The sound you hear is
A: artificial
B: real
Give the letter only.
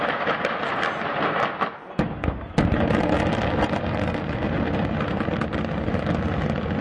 B